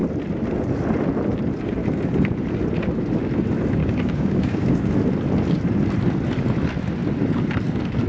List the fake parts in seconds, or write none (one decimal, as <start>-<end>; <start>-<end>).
3.8-4.9